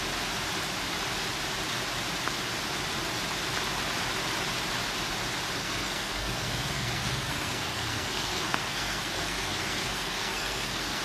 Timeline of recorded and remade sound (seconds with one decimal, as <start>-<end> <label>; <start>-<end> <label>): 0.0-5.6 recorded; 5.6-11.0 remade